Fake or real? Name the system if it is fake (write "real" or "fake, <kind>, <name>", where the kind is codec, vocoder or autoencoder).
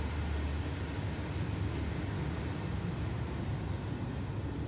real